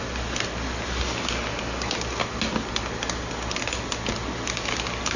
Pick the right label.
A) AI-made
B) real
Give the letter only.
B